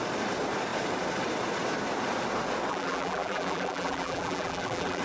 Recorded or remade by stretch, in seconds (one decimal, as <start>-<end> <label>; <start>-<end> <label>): 0.0-2.7 recorded; 2.7-5.0 remade